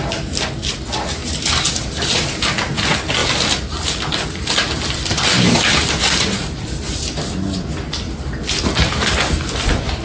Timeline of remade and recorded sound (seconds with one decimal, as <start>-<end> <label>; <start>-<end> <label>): 0.0-1.2 recorded; 1.2-2.1 remade; 2.1-5.1 recorded; 5.1-6.9 remade; 6.9-10.0 recorded